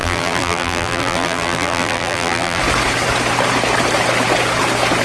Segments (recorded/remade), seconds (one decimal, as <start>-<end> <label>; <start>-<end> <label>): 0.0-2.6 remade; 2.6-5.0 recorded